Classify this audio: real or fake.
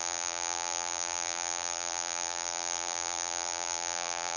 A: fake